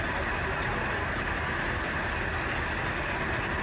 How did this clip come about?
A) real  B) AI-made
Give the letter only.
A